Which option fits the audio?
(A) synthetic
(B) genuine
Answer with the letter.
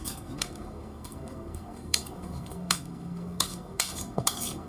A